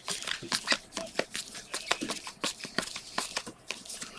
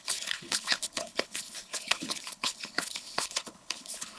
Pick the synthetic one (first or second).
second